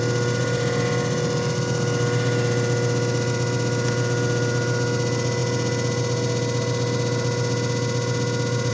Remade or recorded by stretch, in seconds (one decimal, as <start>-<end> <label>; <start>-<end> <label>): 0.0-8.7 recorded